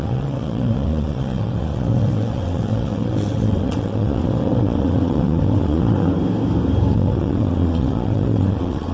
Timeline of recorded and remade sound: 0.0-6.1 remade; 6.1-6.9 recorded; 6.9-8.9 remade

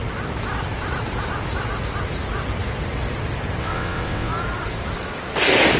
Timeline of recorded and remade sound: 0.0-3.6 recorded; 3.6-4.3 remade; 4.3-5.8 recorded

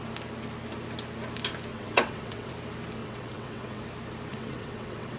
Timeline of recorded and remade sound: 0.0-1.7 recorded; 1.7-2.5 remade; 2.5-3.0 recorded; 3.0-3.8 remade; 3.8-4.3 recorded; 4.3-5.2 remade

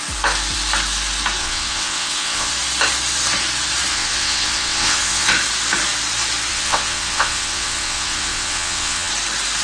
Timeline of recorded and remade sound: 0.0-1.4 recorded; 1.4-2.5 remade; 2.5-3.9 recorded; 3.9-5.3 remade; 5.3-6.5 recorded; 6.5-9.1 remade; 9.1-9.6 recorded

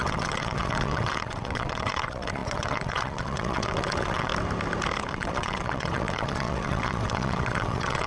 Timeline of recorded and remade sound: 0.0-4.3 remade; 4.3-5.1 recorded; 5.1-8.1 remade

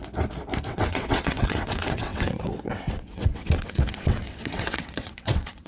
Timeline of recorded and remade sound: 0.0-0.7 recorded; 0.7-5.7 remade

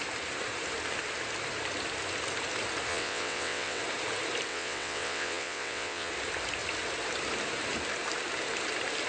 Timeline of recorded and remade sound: 0.0-2.9 recorded; 2.9-3.8 remade; 3.8-4.5 recorded; 4.5-6.1 remade; 6.1-9.1 recorded

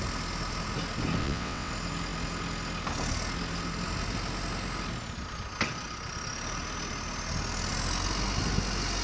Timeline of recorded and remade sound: 0.0-1.2 recorded; 1.2-1.7 remade; 1.7-9.0 recorded